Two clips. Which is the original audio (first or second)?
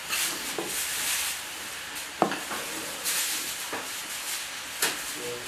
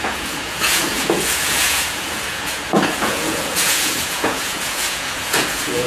first